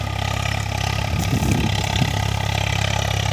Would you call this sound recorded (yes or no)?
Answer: yes